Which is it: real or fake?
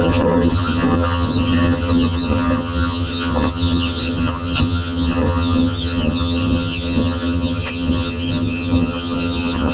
fake